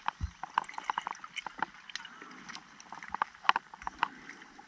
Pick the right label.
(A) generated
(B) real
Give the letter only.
B